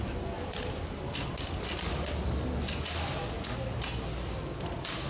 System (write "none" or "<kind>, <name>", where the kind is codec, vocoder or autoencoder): none